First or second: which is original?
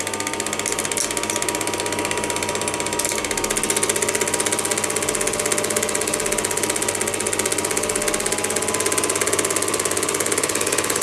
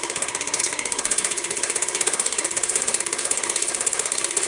first